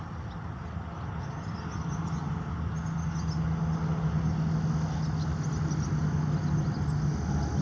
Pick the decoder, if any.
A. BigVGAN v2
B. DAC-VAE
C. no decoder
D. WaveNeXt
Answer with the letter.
C